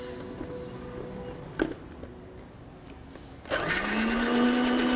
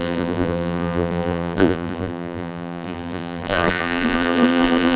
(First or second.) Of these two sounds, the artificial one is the second